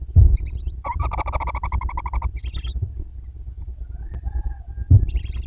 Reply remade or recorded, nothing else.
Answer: recorded